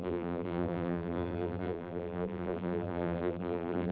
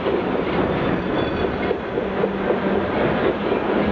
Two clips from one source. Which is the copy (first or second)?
first